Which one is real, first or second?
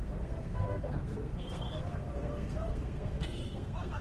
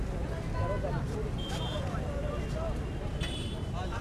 second